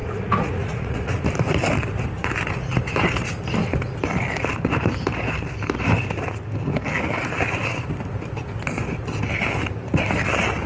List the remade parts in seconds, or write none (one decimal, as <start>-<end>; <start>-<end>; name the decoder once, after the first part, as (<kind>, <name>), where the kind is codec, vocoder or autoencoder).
0.0-1.2 (vocoder, Vocos)